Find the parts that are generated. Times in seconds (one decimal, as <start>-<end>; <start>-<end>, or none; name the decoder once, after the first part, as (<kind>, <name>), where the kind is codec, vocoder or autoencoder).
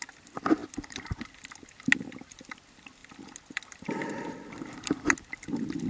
0.6-1.7 (vocoder, BigVGAN v2); 3.0-5.5